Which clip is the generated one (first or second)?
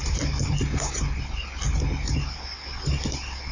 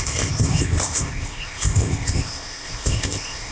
second